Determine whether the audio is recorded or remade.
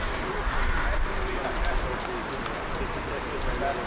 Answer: recorded